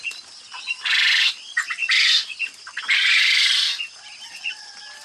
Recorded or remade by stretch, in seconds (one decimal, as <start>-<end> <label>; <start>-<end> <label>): 0.0-5.0 recorded